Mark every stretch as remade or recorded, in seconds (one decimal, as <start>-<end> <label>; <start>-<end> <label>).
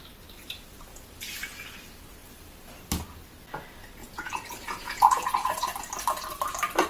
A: 0.0-4.0 recorded; 4.0-5.7 remade; 5.7-6.9 recorded